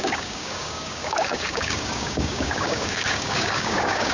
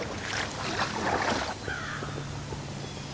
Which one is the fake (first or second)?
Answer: first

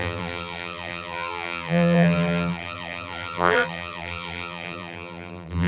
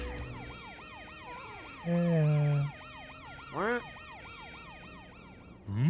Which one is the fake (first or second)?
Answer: first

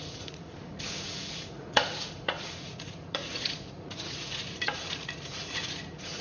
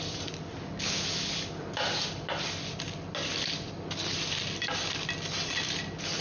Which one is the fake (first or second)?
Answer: first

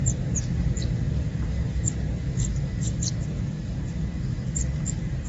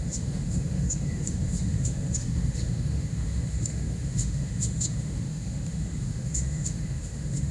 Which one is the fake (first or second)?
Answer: second